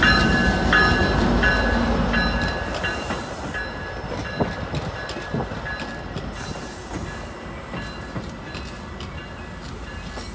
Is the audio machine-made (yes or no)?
no